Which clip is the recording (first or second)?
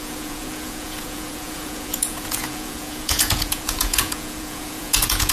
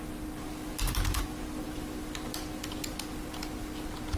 second